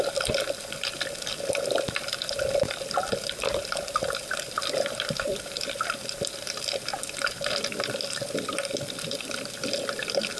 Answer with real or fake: real